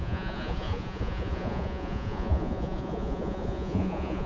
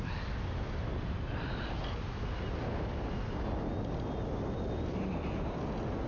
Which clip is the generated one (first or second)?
first